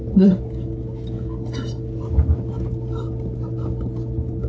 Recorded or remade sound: recorded